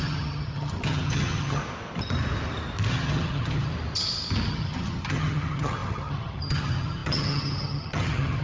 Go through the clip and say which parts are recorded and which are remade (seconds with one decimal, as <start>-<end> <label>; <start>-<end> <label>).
0.0-1.6 remade; 1.6-2.9 recorded; 2.9-3.7 remade; 3.7-4.5 recorded; 4.5-8.4 remade

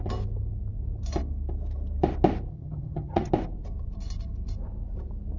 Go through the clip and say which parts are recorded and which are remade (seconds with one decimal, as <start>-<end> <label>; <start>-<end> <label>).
0.0-2.5 recorded; 2.5-3.3 remade; 3.3-5.4 recorded